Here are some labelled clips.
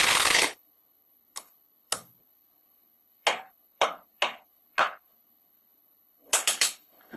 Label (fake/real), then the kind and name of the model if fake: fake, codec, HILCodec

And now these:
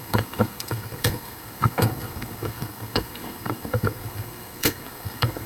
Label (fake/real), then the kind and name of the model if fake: fake, codec, SNAC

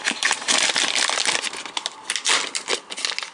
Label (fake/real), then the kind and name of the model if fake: real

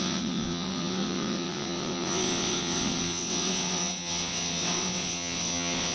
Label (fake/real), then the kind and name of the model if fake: fake, vocoder, WaveNeXt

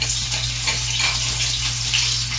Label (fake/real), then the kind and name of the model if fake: real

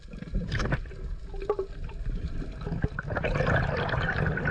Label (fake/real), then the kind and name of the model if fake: real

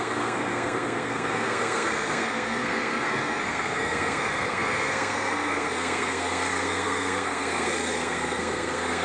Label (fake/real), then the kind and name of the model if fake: fake, codec, SNAC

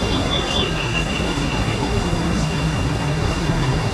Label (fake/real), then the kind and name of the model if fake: fake, codec, SNAC